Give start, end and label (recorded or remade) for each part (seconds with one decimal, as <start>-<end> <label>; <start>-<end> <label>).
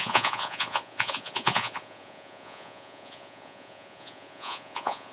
0.0-5.1 remade